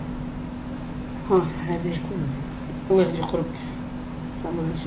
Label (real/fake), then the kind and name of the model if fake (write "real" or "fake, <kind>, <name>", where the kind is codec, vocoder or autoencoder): real